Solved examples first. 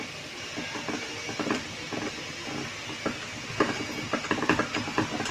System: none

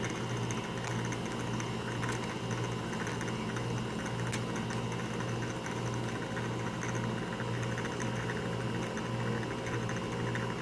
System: none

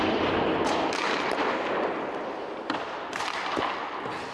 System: none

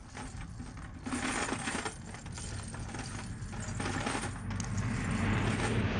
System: none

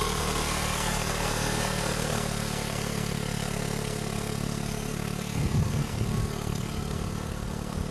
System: codec, SNAC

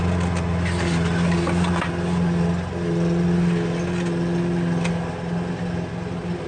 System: none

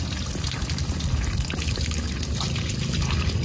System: none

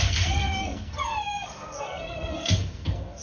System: codec, SNAC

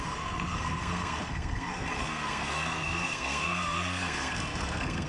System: codec, SNAC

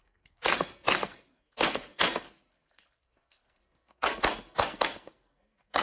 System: codec, SNAC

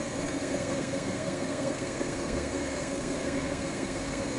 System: codec, SNAC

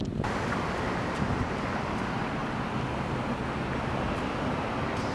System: none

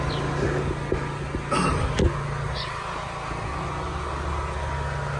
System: none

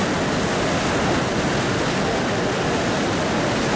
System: none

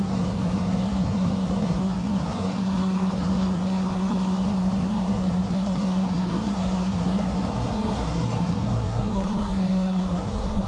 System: codec, SNAC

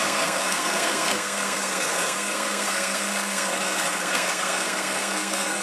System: codec, SNAC